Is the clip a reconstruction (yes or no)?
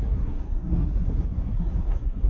yes